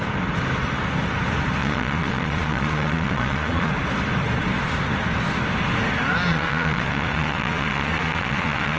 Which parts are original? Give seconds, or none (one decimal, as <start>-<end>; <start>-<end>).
0.0-1.6; 3.7-6.3